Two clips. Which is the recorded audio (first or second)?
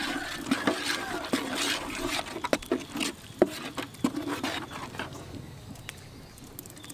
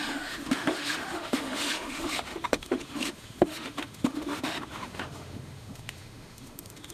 first